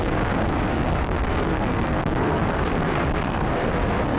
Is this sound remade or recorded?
remade